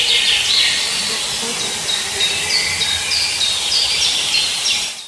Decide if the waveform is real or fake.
real